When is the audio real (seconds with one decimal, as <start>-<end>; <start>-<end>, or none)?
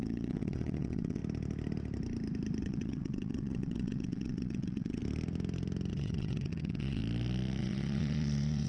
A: 1.2-2.6; 5.0-5.9; 7.0-7.6